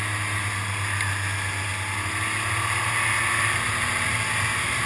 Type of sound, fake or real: real